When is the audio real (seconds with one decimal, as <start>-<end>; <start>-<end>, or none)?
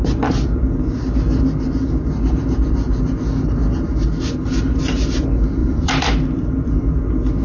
0.0-5.6; 6.9-7.4